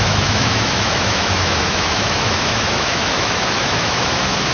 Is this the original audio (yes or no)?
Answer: no